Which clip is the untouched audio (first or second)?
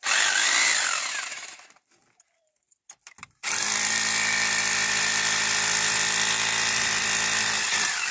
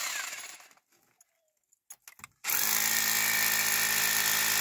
second